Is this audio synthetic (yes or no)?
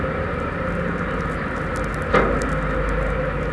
no